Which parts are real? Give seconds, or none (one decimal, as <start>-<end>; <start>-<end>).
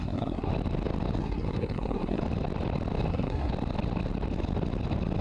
0.5-1.2; 2.2-3.1; 3.5-5.2